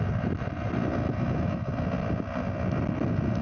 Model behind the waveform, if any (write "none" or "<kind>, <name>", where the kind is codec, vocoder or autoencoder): none